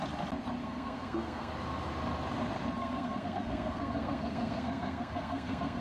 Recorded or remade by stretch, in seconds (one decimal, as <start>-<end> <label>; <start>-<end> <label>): 0.0-0.6 recorded; 0.6-1.5 remade; 1.5-2.8 recorded; 2.8-5.8 remade